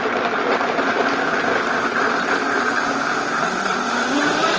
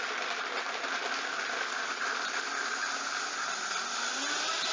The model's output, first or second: first